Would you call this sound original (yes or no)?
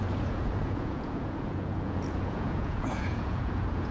no